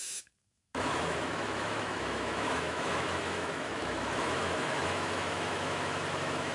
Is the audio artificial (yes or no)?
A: yes